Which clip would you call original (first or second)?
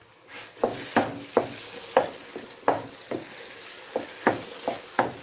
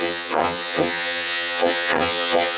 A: first